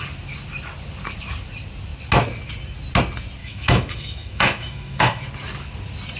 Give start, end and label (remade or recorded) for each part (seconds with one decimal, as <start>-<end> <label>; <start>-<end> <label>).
0.0-3.4 recorded; 3.4-5.2 remade; 5.2-6.2 recorded